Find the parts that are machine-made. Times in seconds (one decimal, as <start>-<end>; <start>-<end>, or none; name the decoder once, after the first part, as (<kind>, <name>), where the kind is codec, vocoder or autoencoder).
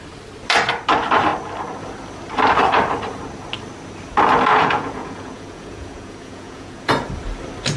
4.5-6.9 (vocoder, Vocos)